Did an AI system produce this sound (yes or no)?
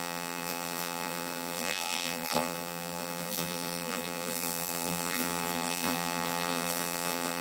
yes